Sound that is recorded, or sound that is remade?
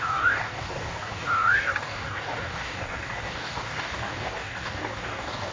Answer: remade